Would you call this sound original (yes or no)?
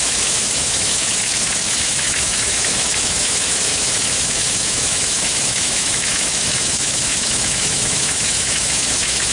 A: no